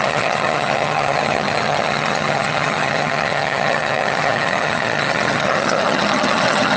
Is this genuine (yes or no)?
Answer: no